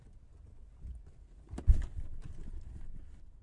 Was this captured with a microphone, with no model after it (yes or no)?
yes